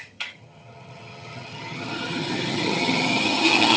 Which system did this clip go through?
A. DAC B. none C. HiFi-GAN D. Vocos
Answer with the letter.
C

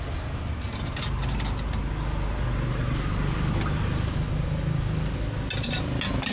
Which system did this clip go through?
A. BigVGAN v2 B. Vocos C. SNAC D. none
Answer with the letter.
D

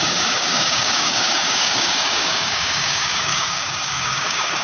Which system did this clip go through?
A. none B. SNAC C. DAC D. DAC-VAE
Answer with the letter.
C